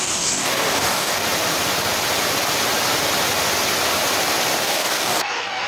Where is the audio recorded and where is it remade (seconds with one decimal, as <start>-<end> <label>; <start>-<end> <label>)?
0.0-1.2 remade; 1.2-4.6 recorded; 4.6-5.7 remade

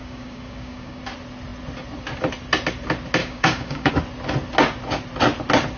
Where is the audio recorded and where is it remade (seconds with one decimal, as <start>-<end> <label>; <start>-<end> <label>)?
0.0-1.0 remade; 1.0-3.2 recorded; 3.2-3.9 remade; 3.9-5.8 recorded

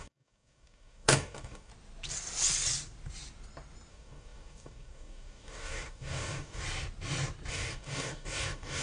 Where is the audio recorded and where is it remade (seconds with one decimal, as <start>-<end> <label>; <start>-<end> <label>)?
0.0-1.7 remade; 1.7-3.9 recorded; 3.9-6.6 remade; 6.6-7.5 recorded; 7.5-8.8 remade

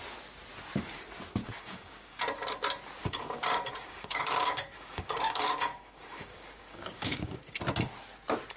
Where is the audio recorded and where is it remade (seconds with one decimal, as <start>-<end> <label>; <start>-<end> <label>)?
0.0-1.4 recorded; 1.4-2.2 remade; 2.2-3.0 recorded; 3.0-7.5 remade; 7.5-8.6 recorded

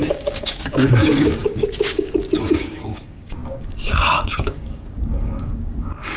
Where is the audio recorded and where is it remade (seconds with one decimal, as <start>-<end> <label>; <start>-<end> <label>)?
0.0-6.2 remade

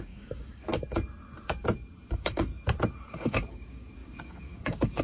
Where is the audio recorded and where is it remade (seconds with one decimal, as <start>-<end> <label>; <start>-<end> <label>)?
0.0-0.7 remade; 0.7-2.1 recorded; 2.1-2.5 remade; 2.5-3.1 recorded; 3.1-5.0 remade

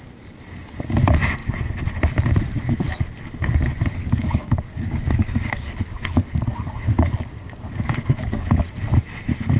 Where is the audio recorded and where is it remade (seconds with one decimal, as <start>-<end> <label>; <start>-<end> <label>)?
0.0-4.0 recorded; 4.0-8.6 remade; 8.6-9.6 recorded

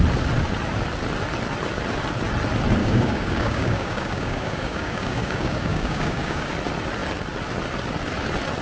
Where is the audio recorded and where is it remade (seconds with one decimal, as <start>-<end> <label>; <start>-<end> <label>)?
0.0-2.8 recorded; 2.8-6.5 remade; 6.5-8.6 recorded